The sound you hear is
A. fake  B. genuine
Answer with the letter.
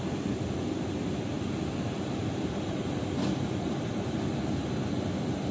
B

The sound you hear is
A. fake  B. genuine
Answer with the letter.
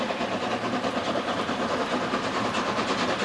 B